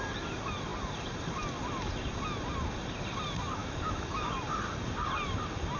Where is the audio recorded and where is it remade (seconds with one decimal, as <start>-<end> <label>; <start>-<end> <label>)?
0.0-3.6 recorded; 3.6-4.3 remade; 4.3-5.8 recorded